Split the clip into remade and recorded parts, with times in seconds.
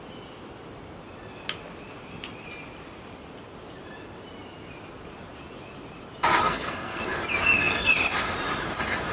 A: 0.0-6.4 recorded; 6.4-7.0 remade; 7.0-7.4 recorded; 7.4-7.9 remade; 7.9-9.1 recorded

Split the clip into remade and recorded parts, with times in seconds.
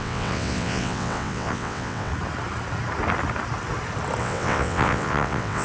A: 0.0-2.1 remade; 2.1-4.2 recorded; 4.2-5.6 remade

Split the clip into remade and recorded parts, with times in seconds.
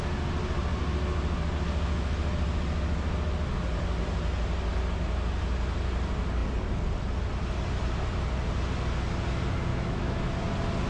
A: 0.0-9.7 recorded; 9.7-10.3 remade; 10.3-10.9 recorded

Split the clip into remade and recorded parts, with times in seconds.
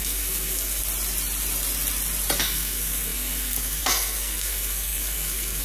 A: 0.0-0.8 remade; 0.8-2.4 recorded; 2.4-5.6 remade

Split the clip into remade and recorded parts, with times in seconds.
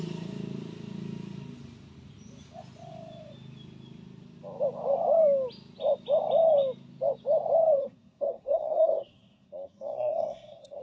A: 0.0-7.8 recorded; 7.8-10.8 remade